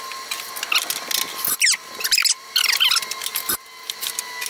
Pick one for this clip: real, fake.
real